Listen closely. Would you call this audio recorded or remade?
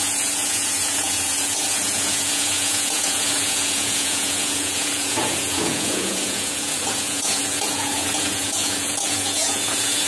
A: remade